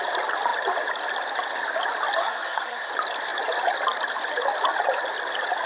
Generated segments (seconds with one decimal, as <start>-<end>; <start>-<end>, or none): 2.2-2.9

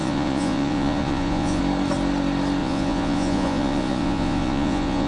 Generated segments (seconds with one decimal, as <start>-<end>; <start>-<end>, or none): 0.0-1.6; 2.6-5.1

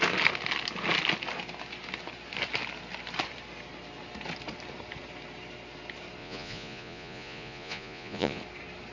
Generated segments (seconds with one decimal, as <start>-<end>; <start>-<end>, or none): 6.2-8.4

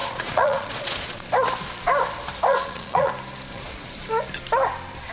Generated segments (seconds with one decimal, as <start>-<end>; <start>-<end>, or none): 0.0-1.3; 2.5-3.1; 3.5-4.1

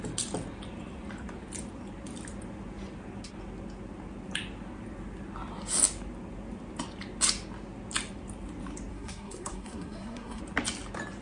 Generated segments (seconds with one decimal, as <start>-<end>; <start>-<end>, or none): 8.9-10.4

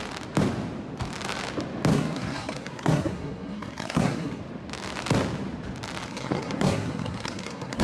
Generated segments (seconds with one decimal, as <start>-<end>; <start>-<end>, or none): 1.9-4.4; 6.1-7.8

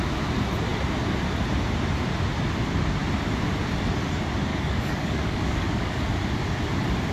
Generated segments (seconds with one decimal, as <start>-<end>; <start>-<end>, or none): 4.5-6.0

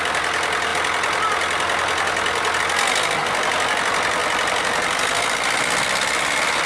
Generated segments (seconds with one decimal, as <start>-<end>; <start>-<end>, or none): 4.2-6.7